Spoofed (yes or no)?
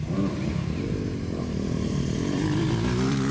yes